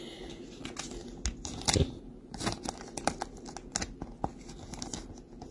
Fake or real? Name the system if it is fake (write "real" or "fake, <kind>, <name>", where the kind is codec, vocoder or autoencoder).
real